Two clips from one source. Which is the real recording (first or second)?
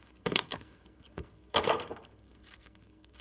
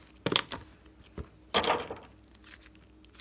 second